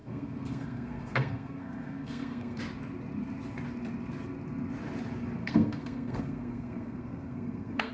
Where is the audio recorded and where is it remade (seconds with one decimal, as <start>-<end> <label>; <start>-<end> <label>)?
0.0-2.6 remade; 2.6-5.4 recorded; 5.4-7.9 remade